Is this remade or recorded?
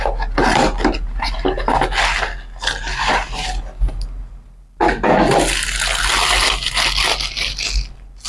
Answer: recorded